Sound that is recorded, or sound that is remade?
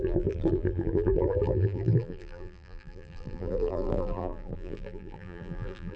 remade